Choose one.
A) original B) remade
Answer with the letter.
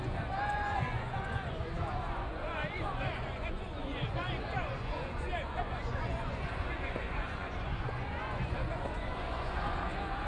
B